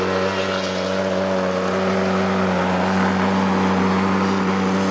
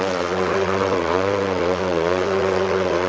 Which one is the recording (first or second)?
first